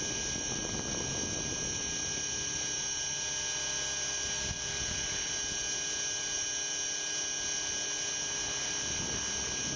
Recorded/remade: recorded